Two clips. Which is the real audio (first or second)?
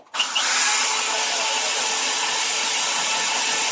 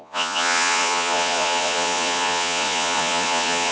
first